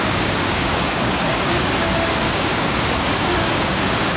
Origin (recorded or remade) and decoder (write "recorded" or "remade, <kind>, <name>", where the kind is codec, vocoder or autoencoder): remade, codec, DAC